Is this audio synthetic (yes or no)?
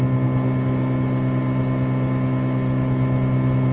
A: no